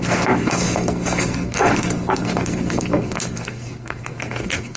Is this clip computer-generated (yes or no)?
yes